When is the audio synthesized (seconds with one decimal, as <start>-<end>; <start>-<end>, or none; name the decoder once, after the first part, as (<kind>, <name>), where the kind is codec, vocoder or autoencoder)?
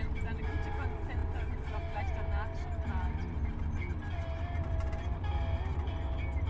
none